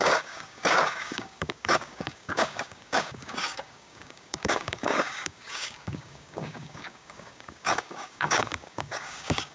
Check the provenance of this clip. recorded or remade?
remade